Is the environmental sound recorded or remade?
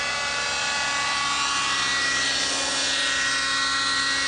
recorded